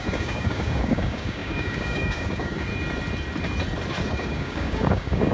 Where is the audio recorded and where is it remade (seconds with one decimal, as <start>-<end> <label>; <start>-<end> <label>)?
0.0-2.7 remade; 2.7-4.1 recorded; 4.1-5.3 remade